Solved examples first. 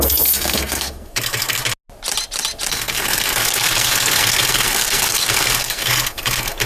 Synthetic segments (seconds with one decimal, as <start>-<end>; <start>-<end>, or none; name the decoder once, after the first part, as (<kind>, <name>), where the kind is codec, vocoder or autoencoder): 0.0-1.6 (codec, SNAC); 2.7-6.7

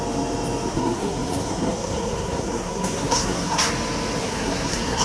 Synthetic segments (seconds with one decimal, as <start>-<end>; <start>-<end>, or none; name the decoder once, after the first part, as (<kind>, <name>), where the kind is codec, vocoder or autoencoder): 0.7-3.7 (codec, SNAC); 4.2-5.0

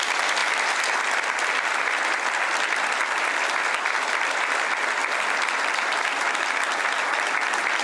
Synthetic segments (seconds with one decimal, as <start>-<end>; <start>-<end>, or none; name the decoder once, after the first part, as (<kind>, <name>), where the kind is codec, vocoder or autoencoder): none

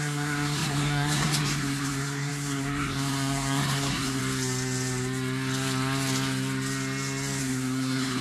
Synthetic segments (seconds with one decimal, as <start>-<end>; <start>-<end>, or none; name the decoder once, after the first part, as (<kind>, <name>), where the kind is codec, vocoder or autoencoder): 0.0-4.2 (codec, SNAC); 7.4-8.2

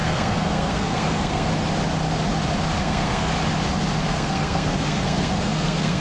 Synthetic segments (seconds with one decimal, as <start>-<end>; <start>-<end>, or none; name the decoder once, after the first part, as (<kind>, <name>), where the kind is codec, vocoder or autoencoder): 0.0-1.5 (codec, SNAC); 2.8-3.3; 4.0-6.0